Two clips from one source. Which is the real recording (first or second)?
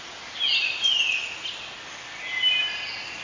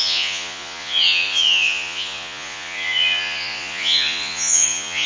first